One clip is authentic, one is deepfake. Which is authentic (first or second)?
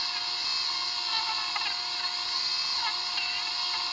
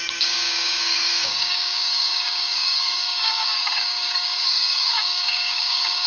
first